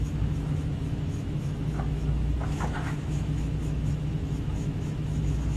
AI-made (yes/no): yes